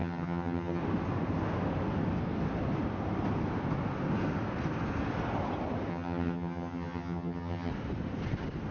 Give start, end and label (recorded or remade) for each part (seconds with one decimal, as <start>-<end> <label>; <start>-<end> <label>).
0.0-0.8 remade; 0.8-5.9 recorded; 5.9-7.7 remade; 7.7-8.7 recorded